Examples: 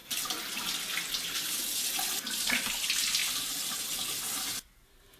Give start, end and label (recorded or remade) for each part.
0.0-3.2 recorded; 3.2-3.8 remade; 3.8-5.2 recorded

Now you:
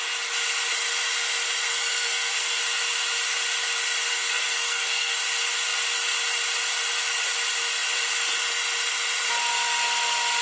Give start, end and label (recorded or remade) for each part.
0.0-1.7 recorded; 1.7-2.6 remade; 2.6-4.1 recorded; 4.1-5.2 remade; 5.2-10.4 recorded

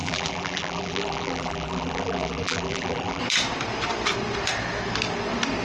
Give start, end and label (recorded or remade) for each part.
0.0-3.2 remade; 3.2-5.6 recorded

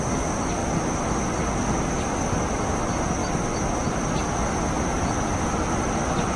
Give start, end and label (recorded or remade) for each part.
0.0-6.4 recorded